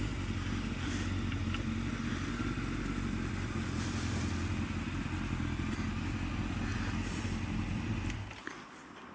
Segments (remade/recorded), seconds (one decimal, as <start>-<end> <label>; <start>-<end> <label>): 0.0-9.1 recorded